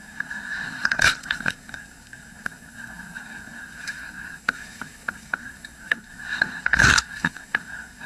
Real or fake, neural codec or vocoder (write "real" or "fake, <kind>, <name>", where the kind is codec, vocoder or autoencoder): fake, codec, SNAC